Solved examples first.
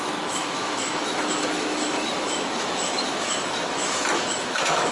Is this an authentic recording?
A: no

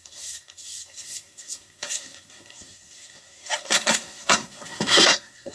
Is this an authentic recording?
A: no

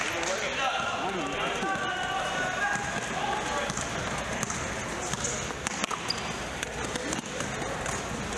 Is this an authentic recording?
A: yes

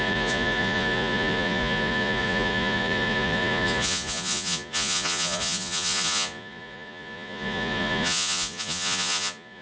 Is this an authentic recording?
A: no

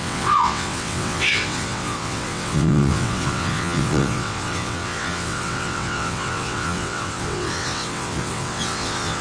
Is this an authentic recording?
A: no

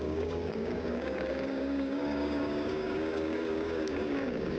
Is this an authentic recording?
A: no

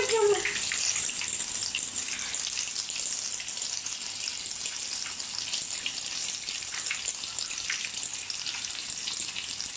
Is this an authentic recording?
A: yes